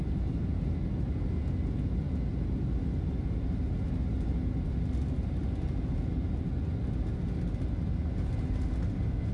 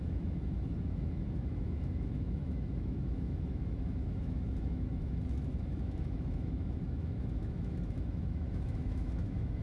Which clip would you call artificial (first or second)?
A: second